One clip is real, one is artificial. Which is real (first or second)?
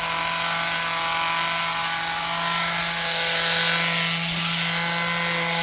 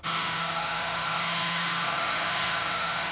first